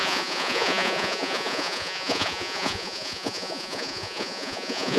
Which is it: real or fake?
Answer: fake